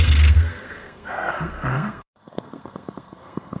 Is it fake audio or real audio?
fake